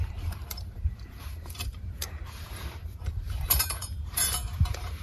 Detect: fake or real fake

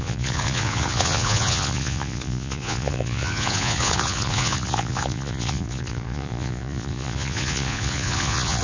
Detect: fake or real fake